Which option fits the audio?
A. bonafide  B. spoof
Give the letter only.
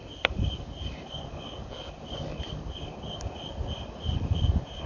A